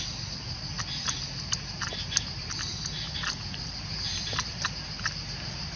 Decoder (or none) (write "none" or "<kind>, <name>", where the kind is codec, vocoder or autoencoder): none